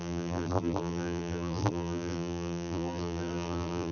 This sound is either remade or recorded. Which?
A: remade